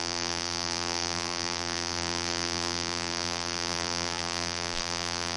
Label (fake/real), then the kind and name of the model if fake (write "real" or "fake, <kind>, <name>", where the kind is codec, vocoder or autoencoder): fake, vocoder, BigVGAN v2